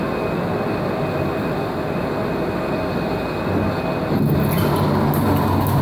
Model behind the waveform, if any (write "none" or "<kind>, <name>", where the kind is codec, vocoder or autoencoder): none